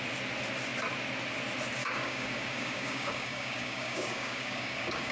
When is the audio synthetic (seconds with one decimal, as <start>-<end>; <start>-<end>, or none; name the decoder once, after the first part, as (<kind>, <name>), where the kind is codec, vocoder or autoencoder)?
1.8-5.1 (codec, DAC)